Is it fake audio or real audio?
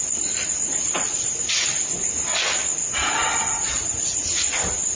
real